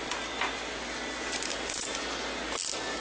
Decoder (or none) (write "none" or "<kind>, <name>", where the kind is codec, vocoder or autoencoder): none